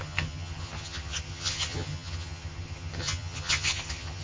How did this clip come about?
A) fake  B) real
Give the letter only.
A